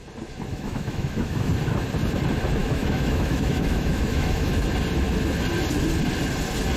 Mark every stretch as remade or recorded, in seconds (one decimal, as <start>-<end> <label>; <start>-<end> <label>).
0.0-0.5 recorded; 0.5-1.5 remade; 1.5-2.6 recorded; 2.6-4.5 remade; 4.5-6.8 recorded